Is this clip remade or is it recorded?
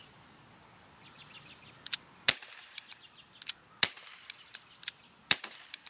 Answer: recorded